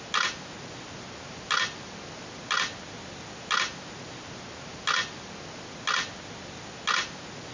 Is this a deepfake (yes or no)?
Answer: no